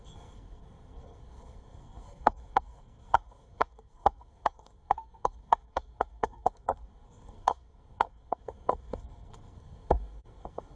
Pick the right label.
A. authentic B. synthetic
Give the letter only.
B